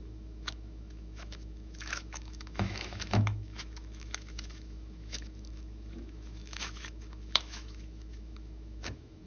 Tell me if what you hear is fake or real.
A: fake